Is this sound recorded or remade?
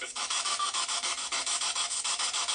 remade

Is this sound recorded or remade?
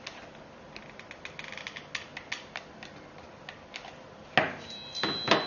recorded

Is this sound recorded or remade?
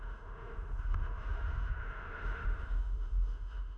remade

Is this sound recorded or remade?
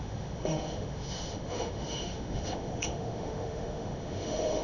remade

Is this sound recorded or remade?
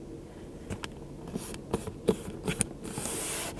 recorded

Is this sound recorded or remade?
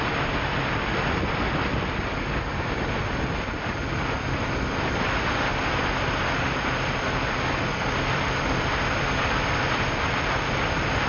recorded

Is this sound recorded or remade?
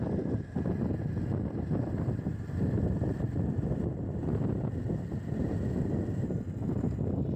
recorded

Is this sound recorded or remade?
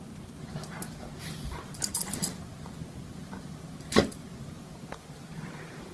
recorded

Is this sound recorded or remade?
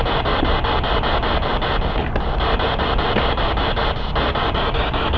recorded